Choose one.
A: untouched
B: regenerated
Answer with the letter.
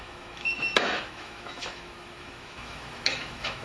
B